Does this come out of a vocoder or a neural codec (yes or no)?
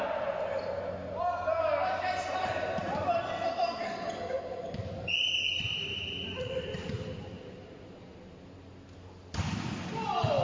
no